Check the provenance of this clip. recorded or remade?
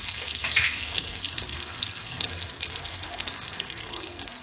remade